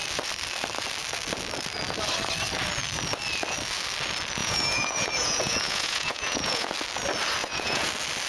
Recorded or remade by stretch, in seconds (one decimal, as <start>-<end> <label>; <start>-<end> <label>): 0.0-4.4 recorded; 4.4-6.7 remade; 6.7-7.4 recorded; 7.4-7.9 remade; 7.9-8.3 recorded